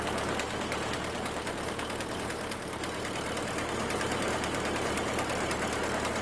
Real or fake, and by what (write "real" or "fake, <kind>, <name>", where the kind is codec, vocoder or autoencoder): fake, vocoder, BigVGAN v2